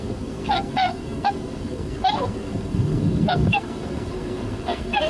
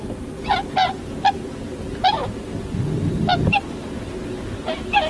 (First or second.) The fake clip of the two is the first